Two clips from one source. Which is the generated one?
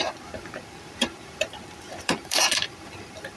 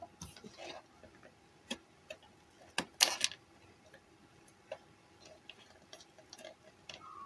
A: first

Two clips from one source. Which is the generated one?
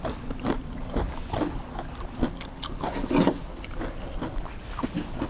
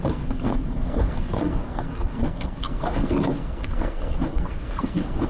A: second